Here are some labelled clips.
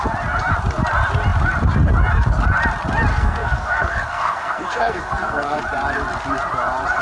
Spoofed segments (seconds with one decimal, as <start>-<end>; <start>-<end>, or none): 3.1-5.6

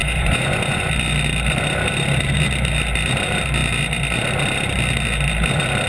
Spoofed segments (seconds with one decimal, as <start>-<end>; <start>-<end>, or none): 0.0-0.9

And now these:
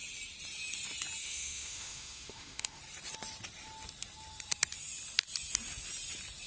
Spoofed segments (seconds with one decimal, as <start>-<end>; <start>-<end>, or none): 1.2-2.8